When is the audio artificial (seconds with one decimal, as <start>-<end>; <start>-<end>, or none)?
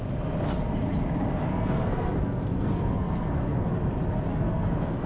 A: 1.5-3.6; 4.3-5.1